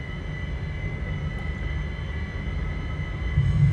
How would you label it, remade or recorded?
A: recorded